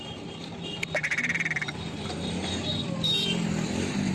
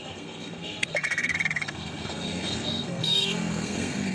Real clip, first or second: first